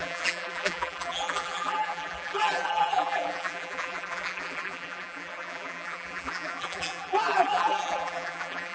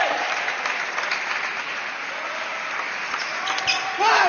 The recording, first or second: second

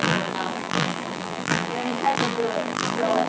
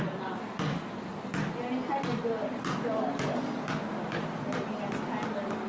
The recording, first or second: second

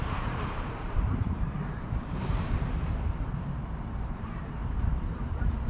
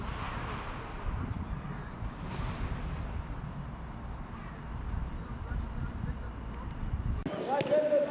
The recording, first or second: second